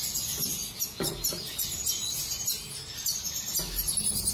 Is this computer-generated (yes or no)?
no